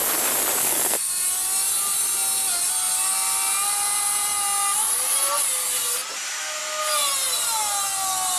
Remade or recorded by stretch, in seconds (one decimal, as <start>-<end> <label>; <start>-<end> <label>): 0.0-0.6 recorded; 0.6-1.1 remade; 1.1-8.4 recorded